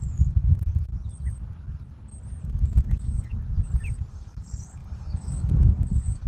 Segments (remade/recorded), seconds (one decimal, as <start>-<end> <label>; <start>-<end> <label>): 0.0-0.9 remade; 0.9-2.4 recorded; 2.4-3.3 remade; 3.3-4.1 recorded; 4.1-6.3 remade